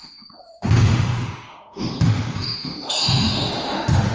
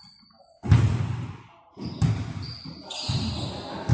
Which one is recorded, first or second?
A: second